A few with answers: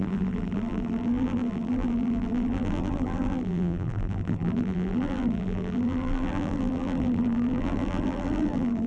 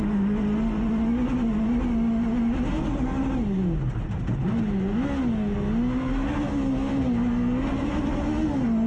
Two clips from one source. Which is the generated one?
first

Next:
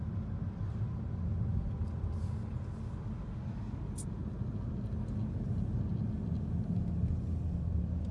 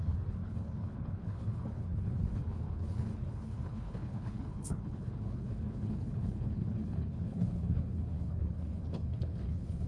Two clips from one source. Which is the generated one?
second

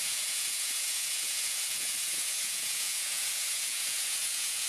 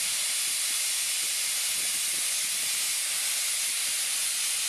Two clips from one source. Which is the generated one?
first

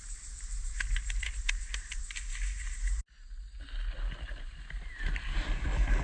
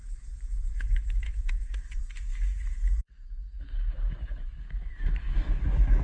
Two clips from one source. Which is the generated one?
second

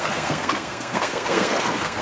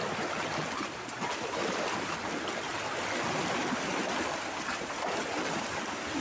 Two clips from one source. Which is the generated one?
first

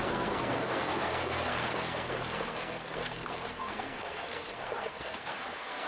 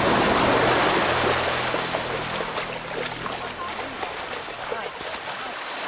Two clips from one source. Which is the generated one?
first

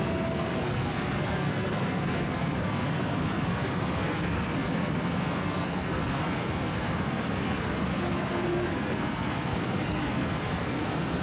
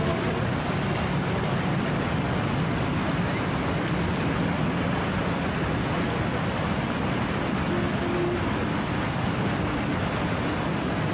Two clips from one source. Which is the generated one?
first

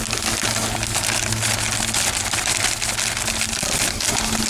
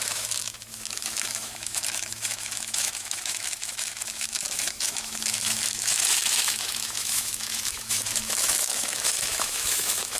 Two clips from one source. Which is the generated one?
second